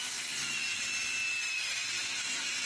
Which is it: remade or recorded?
recorded